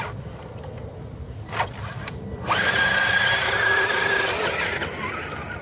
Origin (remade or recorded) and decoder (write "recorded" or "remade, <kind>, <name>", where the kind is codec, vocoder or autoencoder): recorded